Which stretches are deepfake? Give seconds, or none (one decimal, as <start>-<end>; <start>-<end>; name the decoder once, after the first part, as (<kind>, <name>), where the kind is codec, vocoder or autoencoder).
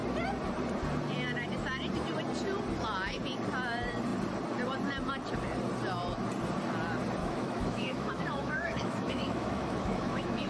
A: 7.2-10.5 (autoencoder, DAC-VAE)